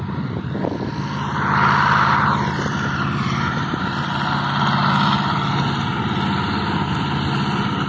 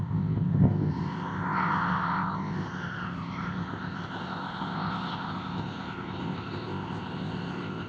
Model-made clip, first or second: second